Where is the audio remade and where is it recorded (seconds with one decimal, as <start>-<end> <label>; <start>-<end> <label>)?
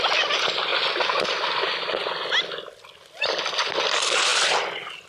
0.0-0.7 recorded; 0.7-1.3 remade; 1.3-5.1 recorded